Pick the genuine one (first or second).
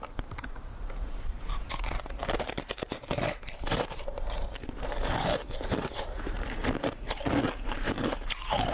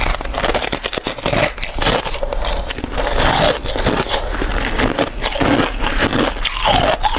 second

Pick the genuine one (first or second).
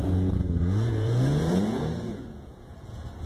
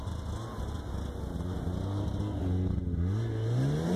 second